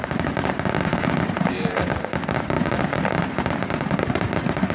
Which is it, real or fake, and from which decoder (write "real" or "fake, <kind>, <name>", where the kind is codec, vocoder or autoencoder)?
fake, vocoder, BigVGAN v2